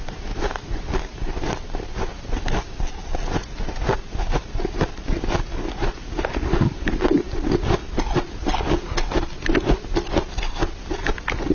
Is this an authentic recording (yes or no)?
yes